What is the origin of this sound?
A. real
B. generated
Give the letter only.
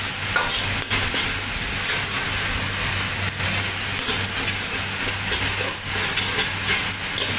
A